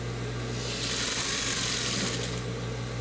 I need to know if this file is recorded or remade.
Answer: recorded